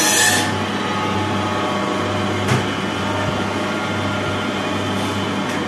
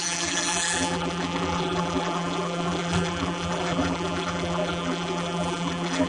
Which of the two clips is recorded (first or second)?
first